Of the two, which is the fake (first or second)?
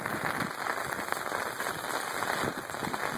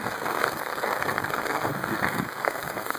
second